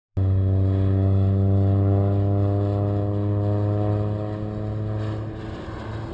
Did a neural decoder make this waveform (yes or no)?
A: no